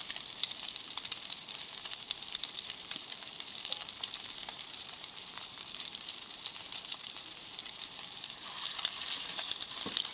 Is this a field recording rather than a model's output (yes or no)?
no